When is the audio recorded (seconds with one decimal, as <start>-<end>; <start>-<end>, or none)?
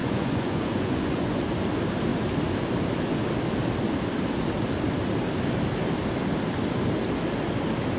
1.5-8.0